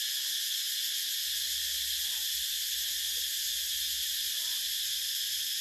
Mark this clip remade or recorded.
recorded